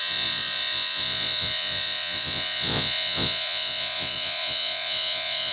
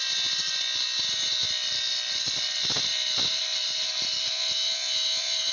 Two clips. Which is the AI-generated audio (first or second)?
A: first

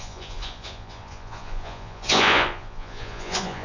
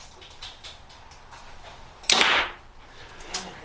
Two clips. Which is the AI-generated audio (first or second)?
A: first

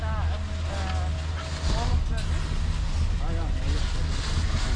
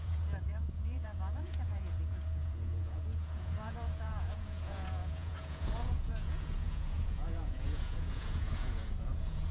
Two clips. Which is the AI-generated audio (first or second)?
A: second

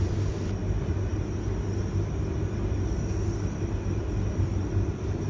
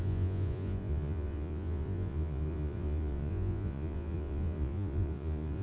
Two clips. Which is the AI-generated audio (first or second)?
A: second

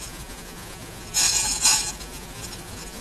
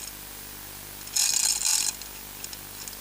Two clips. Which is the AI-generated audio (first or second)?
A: first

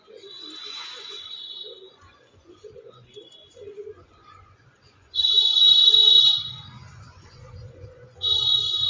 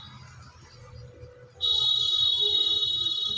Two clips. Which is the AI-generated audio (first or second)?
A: first